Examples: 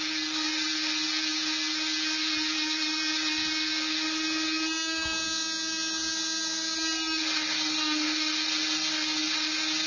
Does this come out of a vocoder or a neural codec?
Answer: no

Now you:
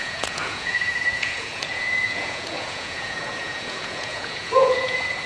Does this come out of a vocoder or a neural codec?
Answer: yes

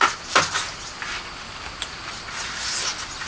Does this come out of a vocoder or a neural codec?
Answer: no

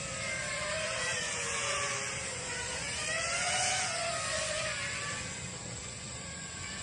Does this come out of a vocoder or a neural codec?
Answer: yes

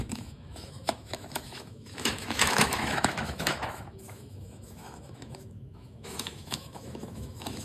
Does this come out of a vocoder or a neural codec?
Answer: yes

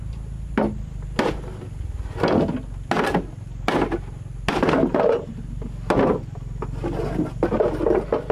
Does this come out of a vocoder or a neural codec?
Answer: no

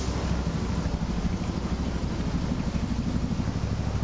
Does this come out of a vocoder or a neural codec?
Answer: no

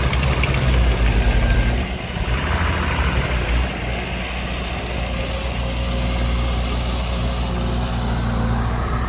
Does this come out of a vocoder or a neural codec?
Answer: no